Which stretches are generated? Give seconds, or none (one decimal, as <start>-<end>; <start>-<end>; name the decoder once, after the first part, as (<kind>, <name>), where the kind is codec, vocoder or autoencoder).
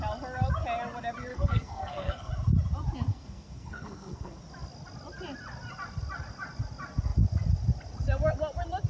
1.3-2.3 (codec, SNAC); 3.1-4.4